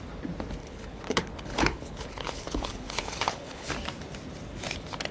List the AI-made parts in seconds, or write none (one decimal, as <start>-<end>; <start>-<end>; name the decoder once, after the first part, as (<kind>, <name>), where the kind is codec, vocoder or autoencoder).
0.6-3.7 (codec, HILCodec)